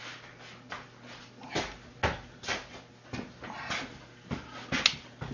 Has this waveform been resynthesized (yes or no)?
no